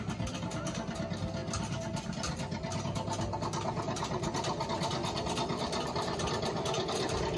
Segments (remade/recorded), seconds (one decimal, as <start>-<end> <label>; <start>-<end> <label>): 0.0-7.4 recorded